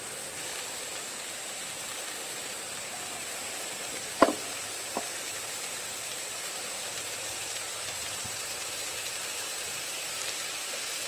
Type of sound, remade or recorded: remade